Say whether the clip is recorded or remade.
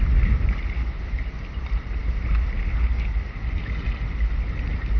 recorded